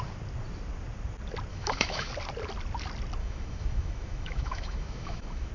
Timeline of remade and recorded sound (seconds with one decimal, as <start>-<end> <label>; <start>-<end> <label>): 0.0-1.5 recorded; 1.5-2.1 remade; 2.1-3.2 recorded; 3.2-5.5 remade